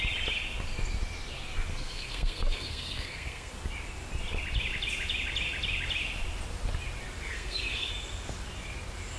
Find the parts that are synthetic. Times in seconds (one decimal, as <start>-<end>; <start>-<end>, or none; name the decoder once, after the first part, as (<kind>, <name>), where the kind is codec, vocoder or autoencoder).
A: 1.7-3.5 (codec, SNAC); 7.2-7.9